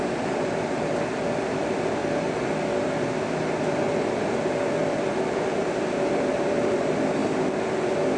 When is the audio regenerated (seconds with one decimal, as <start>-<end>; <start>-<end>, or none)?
0.0-2.0; 4.7-7.2